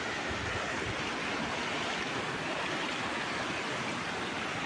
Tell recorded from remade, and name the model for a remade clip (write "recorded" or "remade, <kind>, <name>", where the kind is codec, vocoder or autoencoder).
recorded